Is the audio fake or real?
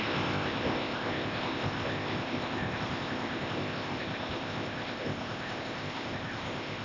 fake